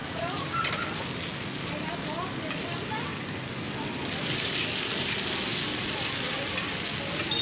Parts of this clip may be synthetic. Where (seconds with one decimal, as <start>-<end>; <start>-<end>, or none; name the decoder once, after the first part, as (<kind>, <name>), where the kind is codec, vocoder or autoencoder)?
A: none